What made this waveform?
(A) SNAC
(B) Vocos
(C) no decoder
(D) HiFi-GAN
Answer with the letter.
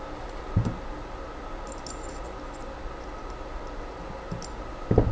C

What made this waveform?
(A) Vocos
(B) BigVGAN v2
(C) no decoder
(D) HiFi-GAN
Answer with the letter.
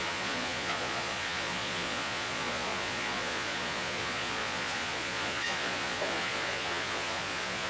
A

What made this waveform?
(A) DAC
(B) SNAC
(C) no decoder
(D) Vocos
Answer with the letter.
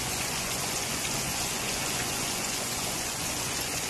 D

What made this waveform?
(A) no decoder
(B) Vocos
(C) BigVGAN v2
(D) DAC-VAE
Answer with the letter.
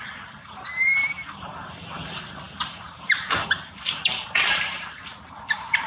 C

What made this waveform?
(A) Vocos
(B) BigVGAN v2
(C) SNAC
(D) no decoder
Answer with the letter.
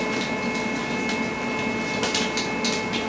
D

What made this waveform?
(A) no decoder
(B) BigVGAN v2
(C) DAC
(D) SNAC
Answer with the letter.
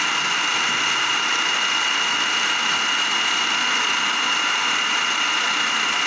A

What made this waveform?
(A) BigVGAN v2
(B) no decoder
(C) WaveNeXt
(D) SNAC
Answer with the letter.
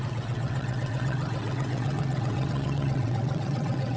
C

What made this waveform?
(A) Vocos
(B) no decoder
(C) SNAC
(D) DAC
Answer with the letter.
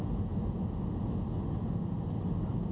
B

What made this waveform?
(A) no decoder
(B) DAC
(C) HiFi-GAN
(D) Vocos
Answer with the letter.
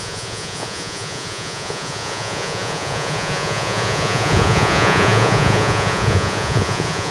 D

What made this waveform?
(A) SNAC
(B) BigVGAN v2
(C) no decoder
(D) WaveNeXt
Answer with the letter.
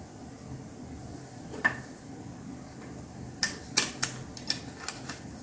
C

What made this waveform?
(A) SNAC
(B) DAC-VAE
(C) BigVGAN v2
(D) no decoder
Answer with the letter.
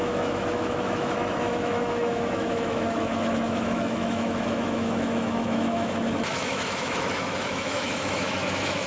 B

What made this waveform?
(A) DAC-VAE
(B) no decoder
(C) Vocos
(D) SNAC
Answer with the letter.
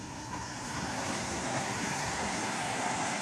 D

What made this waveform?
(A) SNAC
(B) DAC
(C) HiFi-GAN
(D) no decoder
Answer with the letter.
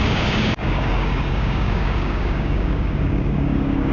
B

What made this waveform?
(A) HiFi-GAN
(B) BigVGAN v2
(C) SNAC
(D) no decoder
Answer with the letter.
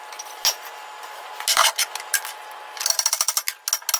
D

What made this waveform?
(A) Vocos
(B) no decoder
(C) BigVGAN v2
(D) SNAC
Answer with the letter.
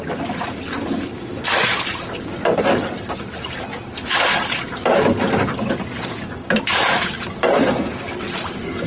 B